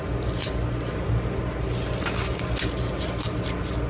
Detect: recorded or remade recorded